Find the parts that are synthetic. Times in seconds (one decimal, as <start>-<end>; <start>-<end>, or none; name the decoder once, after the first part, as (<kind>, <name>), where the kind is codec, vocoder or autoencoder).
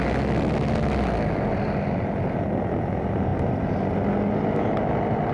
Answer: none